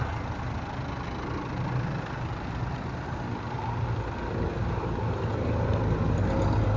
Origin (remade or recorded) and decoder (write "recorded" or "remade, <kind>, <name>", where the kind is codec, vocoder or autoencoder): recorded